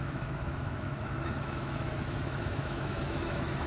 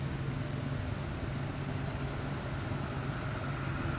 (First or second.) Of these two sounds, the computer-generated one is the first